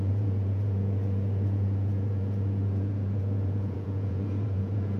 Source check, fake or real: fake